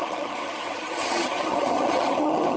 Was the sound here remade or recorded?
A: remade